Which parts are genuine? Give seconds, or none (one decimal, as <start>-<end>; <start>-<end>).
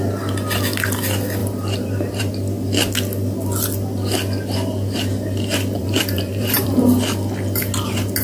0.0-1.4; 2.3-5.8; 6.8-8.2